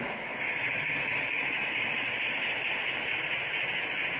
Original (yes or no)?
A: yes